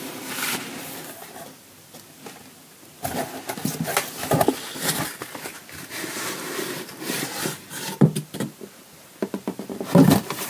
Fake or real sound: fake